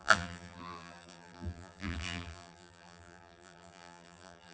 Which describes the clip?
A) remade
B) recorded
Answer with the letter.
A